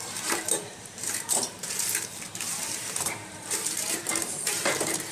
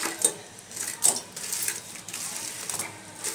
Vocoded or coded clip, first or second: first